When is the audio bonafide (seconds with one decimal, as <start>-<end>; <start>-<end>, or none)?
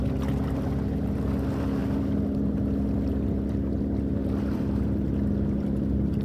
0.0-6.2